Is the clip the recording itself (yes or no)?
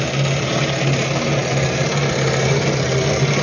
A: yes